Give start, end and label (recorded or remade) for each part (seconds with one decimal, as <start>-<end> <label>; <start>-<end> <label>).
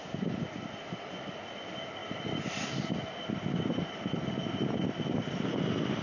0.0-6.0 recorded